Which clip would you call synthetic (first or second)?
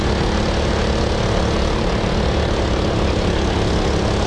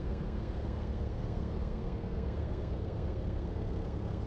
second